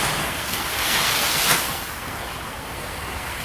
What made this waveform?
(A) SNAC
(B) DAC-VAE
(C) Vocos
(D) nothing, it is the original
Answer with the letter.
A